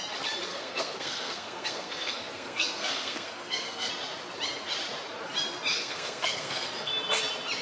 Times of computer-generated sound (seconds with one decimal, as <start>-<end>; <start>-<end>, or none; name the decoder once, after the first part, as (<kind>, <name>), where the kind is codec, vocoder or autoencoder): 0.5-3.9 (codec, SNAC); 5.7-6.9